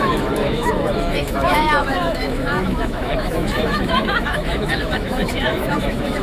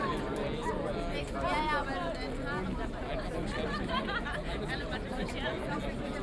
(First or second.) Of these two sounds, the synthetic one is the first